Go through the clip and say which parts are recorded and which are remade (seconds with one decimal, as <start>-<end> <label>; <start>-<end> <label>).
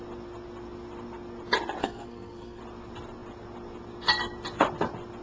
0.0-1.8 recorded; 1.8-2.6 remade; 2.6-5.2 recorded